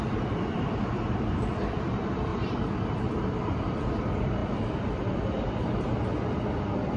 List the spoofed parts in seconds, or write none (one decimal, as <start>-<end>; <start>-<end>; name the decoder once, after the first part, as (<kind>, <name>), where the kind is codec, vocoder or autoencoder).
0.0-2.3 (vocoder, BigVGAN v2); 3.1-7.0